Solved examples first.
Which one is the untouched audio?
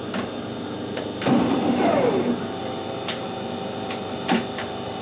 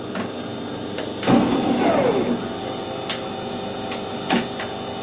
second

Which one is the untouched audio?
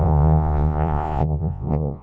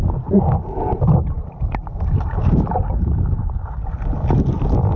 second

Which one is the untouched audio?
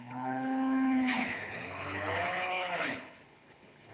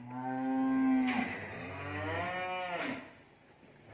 second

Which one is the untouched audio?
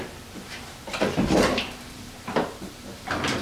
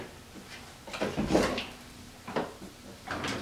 second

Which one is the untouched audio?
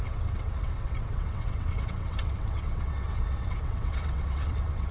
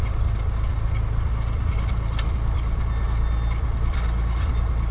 second